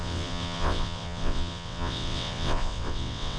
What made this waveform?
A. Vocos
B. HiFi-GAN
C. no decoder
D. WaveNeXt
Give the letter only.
D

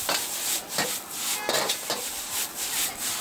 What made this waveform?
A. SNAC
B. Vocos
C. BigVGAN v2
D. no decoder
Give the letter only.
D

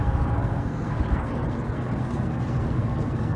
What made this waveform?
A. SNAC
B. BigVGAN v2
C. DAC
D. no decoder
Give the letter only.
A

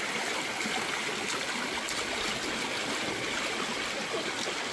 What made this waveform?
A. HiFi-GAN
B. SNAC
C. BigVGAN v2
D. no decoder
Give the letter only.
D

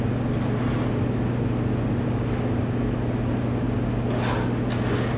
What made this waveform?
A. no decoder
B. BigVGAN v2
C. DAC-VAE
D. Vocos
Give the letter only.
A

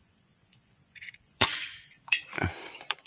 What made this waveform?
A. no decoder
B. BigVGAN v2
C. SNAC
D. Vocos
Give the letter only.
D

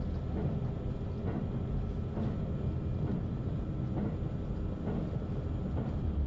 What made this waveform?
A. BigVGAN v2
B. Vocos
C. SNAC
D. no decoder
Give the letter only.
D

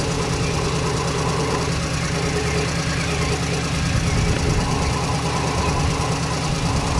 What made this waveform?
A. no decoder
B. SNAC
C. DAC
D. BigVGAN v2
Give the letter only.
A